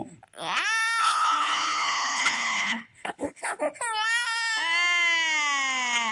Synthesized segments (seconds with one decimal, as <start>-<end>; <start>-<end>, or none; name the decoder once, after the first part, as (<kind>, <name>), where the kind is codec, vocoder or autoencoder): 1.0-3.6 (codec, HILCodec)